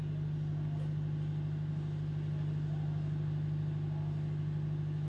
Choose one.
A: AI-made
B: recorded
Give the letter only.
B